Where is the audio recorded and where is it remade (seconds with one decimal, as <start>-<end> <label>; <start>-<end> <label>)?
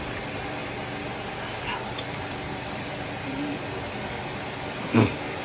0.0-0.6 remade; 0.6-3.8 recorded; 3.8-5.4 remade